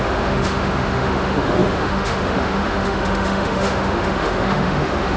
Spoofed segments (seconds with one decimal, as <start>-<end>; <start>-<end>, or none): 0.0-5.2